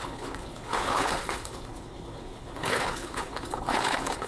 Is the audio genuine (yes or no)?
no